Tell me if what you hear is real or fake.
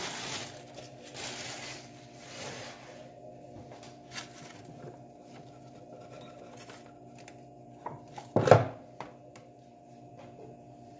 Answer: real